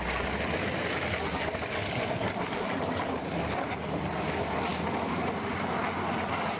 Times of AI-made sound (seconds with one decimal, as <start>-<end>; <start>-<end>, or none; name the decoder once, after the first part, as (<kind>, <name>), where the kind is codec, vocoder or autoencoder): 1.8-3.1 (vocoder, BigVGAN v2); 4.7-5.8